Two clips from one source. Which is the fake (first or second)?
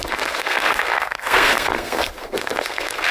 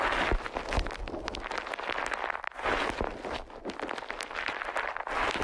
first